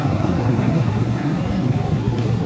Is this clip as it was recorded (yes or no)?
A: no